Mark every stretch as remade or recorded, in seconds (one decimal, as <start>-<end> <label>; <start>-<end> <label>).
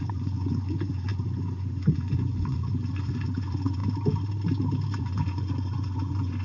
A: 0.0-3.8 remade; 3.8-5.0 recorded; 5.0-6.4 remade